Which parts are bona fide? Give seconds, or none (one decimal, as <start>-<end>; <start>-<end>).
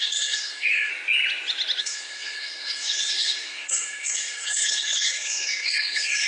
0.9-1.8